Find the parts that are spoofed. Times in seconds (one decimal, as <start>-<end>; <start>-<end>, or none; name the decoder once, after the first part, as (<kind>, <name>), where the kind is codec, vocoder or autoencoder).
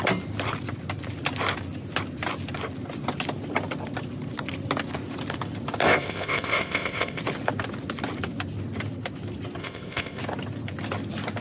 5.8-7.2 (codec, ZipCodec); 9.6-10.2